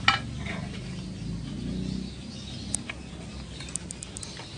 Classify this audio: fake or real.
real